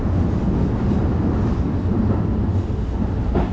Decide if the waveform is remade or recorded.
recorded